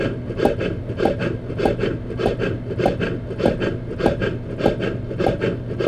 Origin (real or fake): real